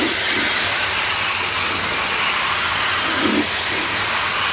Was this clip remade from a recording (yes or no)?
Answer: no